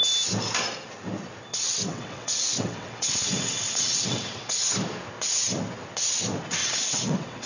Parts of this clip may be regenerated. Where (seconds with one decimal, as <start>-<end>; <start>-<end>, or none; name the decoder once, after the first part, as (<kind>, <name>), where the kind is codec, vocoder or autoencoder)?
1.5-4.7 (vocoder, WaveNeXt); 6.6-7.5